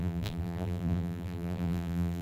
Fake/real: fake